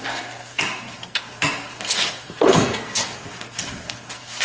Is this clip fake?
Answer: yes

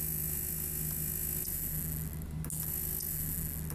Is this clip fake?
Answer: no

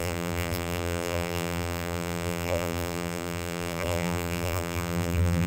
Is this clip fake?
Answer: yes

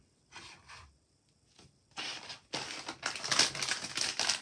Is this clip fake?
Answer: no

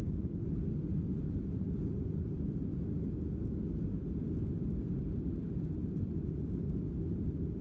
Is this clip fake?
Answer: no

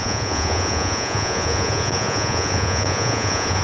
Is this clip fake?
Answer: yes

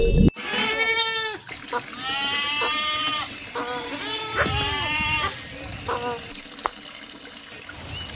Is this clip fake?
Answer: no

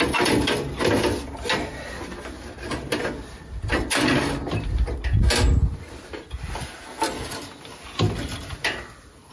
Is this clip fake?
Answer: no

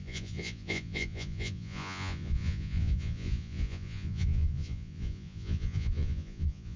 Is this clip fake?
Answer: yes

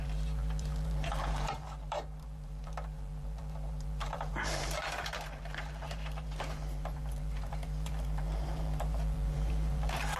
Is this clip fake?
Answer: yes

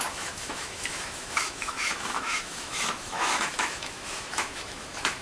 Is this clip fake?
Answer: yes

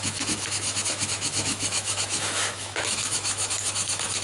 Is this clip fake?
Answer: yes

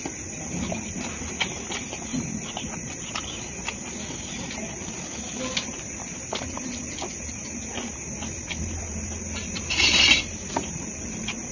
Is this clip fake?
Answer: no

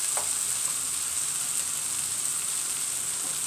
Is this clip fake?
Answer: no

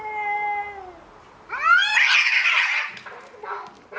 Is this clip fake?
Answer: no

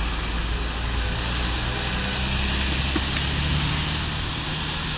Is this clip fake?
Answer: no